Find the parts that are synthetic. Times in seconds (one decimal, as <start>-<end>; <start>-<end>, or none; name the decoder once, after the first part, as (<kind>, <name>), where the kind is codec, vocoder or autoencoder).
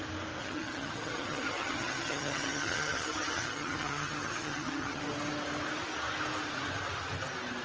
0.4-5.0 (vocoder, HiFi-GAN)